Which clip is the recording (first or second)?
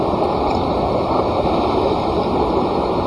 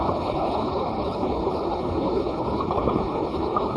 first